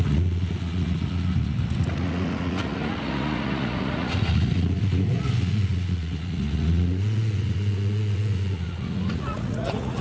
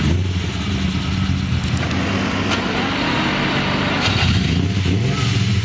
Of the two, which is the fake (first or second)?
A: first